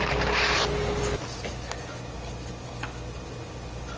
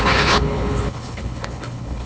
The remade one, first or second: second